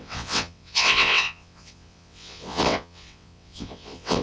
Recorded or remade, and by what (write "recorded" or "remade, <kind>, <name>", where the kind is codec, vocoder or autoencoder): remade, vocoder, WaveNeXt